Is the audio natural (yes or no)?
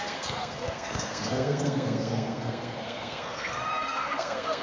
no